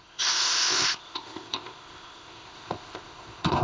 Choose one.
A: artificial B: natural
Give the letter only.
A